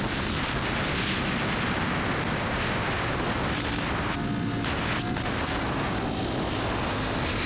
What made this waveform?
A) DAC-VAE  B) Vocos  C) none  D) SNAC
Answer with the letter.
C